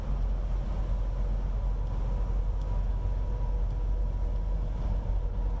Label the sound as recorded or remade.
recorded